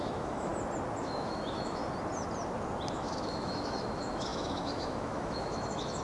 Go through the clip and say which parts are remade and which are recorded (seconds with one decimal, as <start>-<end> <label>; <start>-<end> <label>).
0.0-0.5 remade; 0.5-1.0 recorded; 1.0-1.8 remade; 1.8-2.9 recorded; 2.9-6.0 remade